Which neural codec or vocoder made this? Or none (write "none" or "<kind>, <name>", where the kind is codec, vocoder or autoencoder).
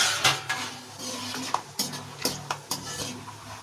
none